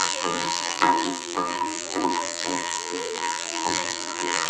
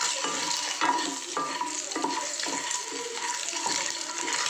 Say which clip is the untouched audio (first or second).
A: second